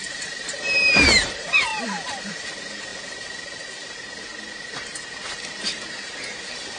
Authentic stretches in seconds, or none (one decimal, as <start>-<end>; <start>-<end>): none